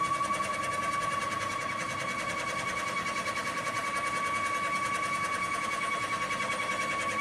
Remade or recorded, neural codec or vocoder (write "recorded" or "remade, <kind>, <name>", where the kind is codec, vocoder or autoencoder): recorded